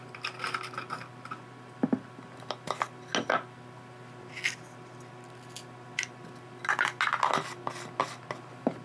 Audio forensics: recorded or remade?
recorded